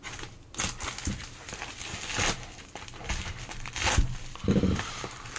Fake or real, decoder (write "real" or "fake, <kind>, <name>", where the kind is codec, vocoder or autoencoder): real